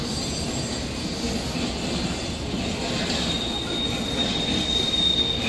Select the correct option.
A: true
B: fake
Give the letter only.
A